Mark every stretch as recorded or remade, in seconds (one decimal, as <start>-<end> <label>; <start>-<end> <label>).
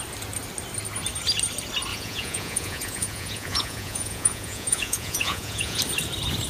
0.0-1.9 recorded; 1.9-5.8 remade; 5.8-6.5 recorded